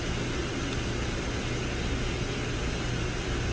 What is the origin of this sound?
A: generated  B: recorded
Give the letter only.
B